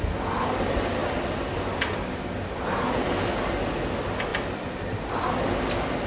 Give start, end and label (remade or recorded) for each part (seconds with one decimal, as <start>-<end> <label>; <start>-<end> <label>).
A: 0.0-6.1 recorded